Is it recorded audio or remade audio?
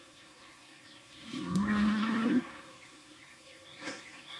remade